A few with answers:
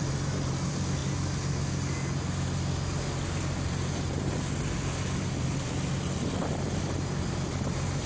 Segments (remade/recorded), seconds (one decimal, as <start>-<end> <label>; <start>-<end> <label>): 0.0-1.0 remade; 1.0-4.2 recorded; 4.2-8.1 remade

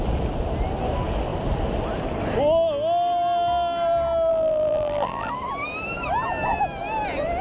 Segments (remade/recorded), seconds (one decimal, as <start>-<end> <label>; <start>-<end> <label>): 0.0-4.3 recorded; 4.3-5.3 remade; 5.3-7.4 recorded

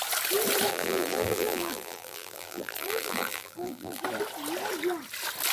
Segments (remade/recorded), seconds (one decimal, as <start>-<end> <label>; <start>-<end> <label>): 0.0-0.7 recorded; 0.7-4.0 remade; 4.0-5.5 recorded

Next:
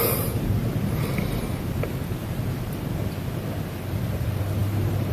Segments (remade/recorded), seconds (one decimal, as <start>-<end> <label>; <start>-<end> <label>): 0.0-0.6 remade; 0.6-1.2 recorded; 1.2-2.2 remade; 2.2-4.1 recorded; 4.1-5.1 remade

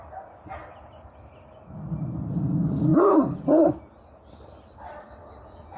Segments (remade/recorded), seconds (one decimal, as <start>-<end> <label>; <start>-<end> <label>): 0.0-5.8 recorded

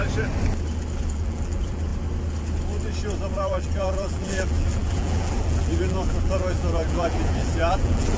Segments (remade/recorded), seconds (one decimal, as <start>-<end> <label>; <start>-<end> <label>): 0.0-1.0 recorded; 1.0-1.9 remade; 1.9-3.3 recorded; 3.3-8.2 remade

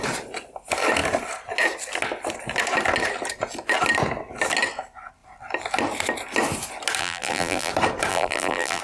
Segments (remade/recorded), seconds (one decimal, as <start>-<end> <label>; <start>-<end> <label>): 0.0-7.0 recorded; 7.0-7.7 remade; 7.7-8.1 recorded; 8.1-8.8 remade